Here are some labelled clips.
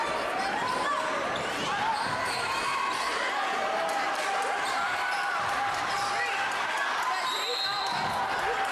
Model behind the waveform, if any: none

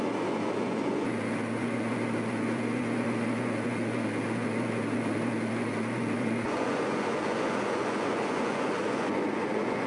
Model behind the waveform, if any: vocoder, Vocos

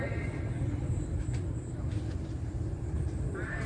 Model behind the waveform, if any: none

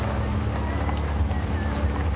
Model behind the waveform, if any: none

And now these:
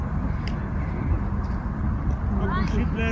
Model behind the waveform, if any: none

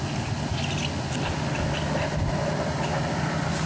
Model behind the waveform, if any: none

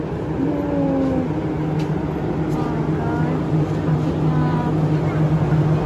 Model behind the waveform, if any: none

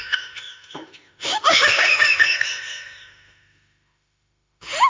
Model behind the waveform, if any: autoencoder, DAC-VAE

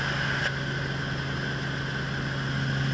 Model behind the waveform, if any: none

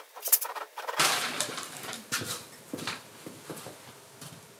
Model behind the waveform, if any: vocoder, BigVGAN v2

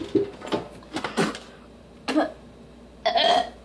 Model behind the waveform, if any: none